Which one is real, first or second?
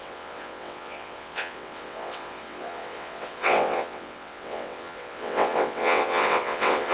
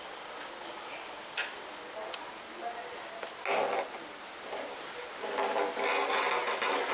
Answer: second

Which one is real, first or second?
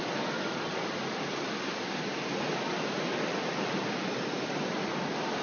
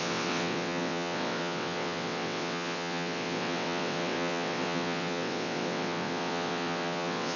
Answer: first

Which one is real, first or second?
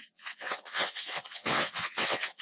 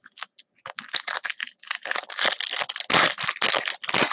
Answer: second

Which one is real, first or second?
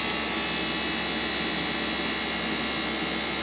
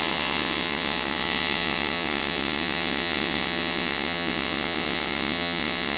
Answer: first